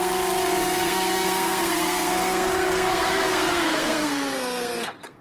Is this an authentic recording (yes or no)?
no